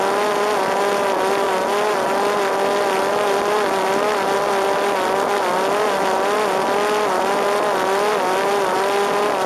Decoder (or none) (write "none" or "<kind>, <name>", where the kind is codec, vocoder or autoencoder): none